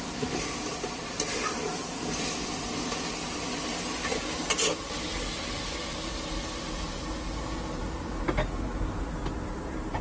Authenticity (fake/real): real